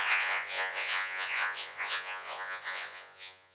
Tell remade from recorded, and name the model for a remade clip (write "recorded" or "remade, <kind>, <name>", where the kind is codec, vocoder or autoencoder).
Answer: remade, vocoder, Vocos